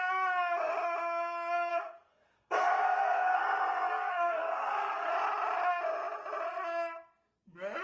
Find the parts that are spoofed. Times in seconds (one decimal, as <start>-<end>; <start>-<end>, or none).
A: 1.7-3.4; 3.9-5.1